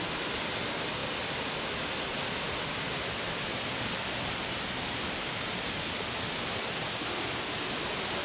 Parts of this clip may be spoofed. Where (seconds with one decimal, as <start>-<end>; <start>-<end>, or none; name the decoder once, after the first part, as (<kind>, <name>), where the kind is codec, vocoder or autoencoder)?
none